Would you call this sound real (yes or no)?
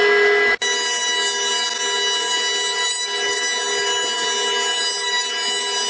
yes